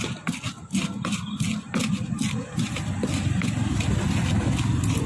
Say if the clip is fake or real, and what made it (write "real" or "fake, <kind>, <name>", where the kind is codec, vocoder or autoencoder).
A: real